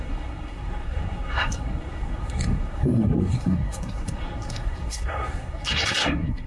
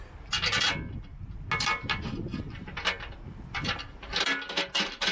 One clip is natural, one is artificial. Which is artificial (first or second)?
first